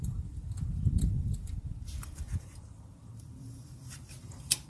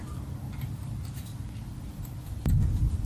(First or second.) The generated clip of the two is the first